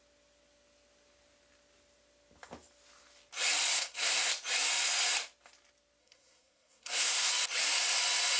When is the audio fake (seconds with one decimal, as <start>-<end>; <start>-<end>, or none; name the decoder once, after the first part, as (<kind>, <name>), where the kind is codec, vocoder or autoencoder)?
3.7-4.3 (codec, SNAC); 6.0-7.3